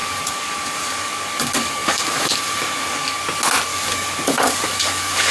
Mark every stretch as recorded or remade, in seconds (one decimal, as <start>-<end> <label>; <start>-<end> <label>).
0.0-3.2 remade; 3.2-3.7 recorded; 3.7-5.3 remade